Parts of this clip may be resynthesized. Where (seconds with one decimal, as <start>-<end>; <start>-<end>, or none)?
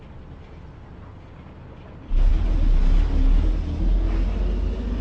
none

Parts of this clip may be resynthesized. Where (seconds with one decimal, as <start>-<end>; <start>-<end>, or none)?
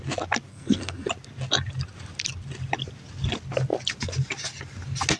0.5-1.1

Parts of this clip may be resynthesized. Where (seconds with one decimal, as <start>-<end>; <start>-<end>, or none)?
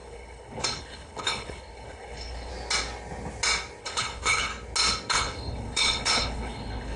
0.0-2.5; 3.8-4.5; 5.1-7.0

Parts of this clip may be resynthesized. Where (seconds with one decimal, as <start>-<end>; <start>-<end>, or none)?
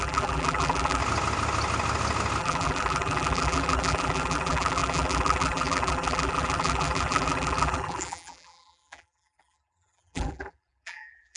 0.0-1.0; 2.4-11.4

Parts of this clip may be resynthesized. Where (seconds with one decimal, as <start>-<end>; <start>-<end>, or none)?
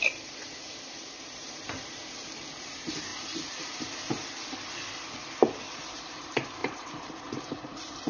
0.0-4.2; 5.7-8.1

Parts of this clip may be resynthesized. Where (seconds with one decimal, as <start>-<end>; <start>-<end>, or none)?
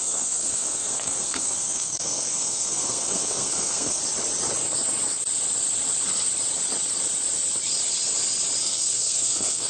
0.0-4.0; 8.6-9.7